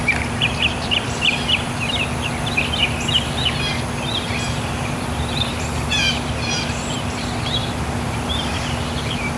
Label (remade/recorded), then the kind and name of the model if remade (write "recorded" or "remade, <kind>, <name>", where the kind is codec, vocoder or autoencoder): remade, vocoder, BigVGAN v2